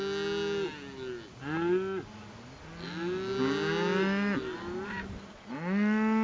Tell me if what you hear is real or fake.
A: real